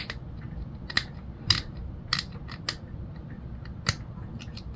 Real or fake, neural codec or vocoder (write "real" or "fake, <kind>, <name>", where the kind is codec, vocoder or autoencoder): real